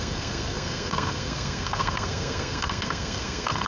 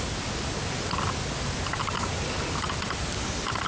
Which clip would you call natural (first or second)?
second